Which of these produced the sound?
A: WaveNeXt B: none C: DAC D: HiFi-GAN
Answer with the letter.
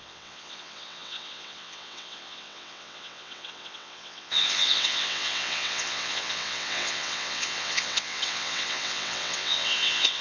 A